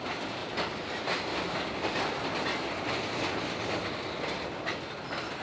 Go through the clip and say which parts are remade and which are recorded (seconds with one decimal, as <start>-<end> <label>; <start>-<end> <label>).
0.0-5.4 recorded